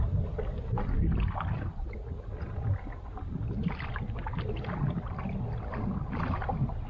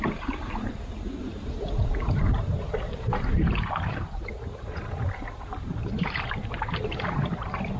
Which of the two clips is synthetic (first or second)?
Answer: second